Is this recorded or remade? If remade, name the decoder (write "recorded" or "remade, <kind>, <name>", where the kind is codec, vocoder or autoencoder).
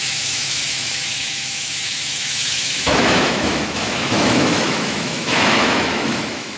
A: remade, autoencoder, DAC-VAE